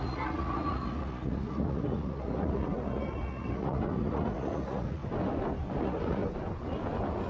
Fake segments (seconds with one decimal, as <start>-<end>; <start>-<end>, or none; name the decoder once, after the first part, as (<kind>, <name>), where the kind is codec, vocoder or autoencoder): 0.0-5.0 (vocoder, Vocos); 5.8-6.2